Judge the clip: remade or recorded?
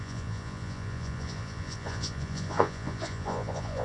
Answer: remade